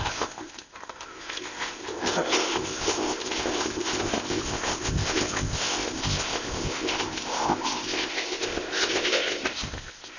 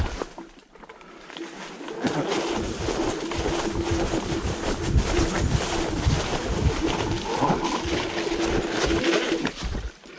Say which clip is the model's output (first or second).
first